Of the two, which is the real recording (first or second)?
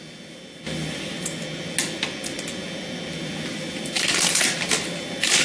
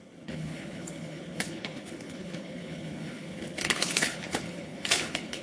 first